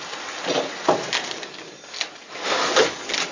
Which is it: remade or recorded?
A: recorded